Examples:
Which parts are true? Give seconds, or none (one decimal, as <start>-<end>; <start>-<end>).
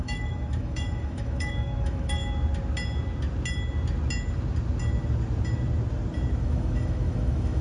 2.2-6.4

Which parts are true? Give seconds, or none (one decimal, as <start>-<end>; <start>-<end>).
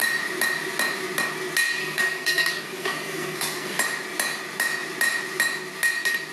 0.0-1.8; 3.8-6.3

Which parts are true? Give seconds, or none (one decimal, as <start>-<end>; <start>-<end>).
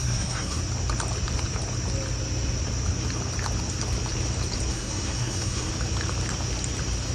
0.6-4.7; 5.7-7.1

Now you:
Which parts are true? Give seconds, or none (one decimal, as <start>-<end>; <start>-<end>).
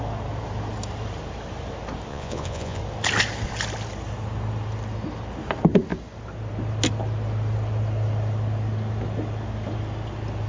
0.0-2.1; 2.8-10.5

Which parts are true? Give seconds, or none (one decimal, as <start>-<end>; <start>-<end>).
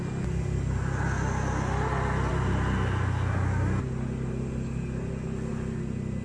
0.0-6.2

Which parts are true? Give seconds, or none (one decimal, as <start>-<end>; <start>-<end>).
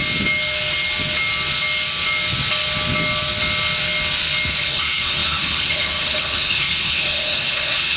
0.0-4.5